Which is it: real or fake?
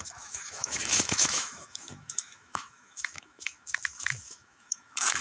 fake